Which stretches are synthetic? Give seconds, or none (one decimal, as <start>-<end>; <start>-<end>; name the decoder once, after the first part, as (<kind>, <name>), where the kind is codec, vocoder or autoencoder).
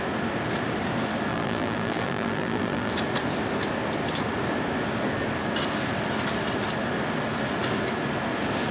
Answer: 1.3-2.9 (vocoder, BigVGAN v2)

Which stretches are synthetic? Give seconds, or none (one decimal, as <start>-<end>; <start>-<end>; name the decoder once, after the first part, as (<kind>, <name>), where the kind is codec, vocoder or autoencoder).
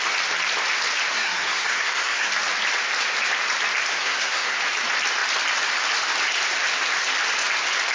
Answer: 1.1-2.3 (codec, SNAC); 3.9-4.6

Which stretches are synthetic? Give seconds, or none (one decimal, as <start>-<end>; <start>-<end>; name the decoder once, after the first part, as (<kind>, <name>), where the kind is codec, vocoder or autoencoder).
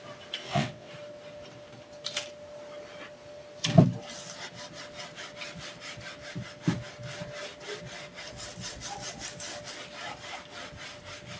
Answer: 0.4-0.9 (vocoder, WaveNeXt)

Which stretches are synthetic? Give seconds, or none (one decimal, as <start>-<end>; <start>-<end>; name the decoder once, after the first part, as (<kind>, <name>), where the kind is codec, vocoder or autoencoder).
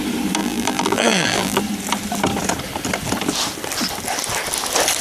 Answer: 0.4-1.6 (vocoder, BigVGAN v2)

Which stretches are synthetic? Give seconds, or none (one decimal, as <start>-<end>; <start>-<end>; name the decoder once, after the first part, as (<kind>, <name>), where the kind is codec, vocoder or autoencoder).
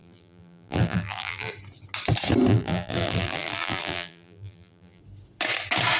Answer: 0.0-1.5 (vocoder, BigVGAN v2); 2.5-5.0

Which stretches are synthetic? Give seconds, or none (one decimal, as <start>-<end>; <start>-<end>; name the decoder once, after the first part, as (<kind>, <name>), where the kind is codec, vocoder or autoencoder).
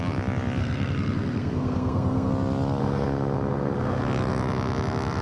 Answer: 0.6-2.3 (codec, SNAC); 2.8-4.0